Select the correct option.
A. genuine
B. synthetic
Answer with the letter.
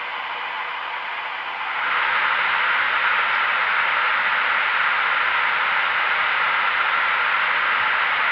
A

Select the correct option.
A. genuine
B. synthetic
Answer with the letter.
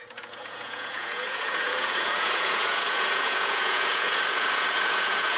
B